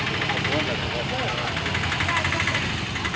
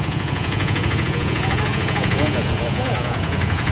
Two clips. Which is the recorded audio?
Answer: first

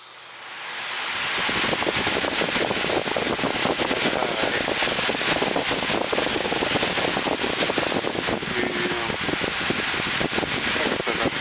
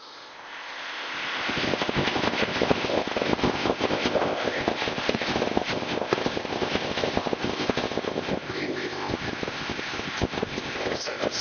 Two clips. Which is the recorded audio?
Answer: first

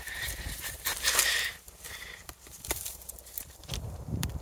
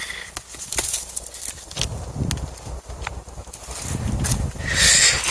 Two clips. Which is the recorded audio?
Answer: second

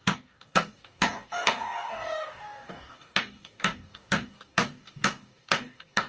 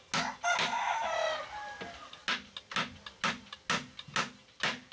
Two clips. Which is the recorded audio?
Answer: second